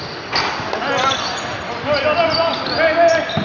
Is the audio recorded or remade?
recorded